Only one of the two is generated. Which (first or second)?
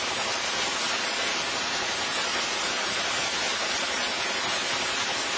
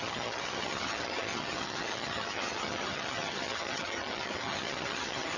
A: second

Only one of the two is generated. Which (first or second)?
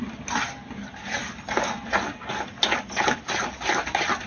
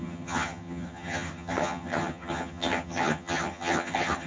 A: second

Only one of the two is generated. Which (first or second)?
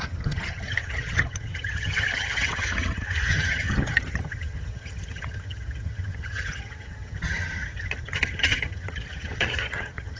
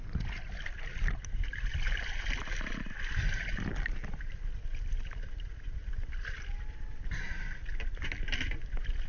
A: first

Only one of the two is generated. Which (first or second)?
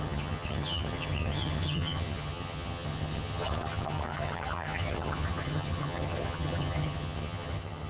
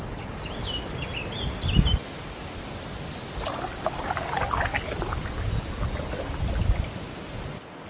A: first